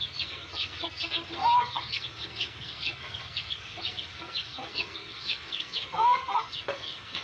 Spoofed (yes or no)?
yes